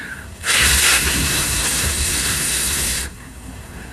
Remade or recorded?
remade